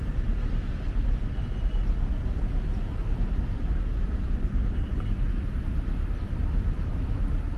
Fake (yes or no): no